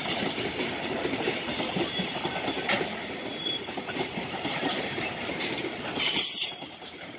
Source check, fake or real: fake